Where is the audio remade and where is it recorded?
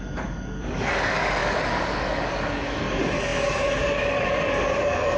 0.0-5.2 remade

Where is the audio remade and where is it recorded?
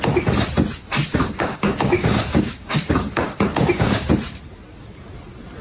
0.0-1.1 recorded; 1.1-4.1 remade; 4.1-5.6 recorded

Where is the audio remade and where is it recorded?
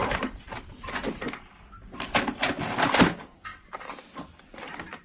0.0-5.0 recorded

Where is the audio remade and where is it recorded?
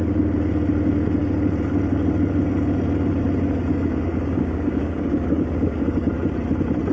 0.0-3.7 recorded; 3.7-6.1 remade; 6.1-6.9 recorded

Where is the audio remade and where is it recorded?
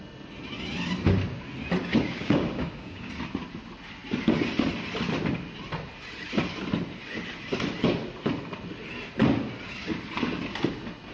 0.0-1.9 recorded; 1.9-3.1 remade; 3.1-11.1 recorded